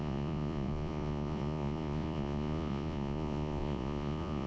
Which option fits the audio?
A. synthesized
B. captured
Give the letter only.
A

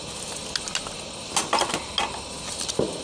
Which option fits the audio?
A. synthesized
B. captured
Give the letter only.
B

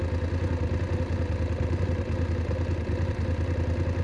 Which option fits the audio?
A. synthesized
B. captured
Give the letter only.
B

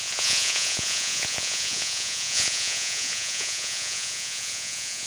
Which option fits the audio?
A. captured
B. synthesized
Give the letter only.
B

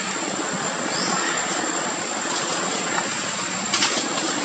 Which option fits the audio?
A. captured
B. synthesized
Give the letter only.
B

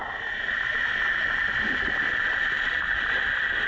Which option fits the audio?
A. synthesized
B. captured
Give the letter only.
B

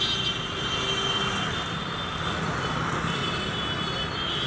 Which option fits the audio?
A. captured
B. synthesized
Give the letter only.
A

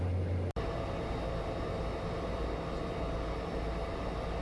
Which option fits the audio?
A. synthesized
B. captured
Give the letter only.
B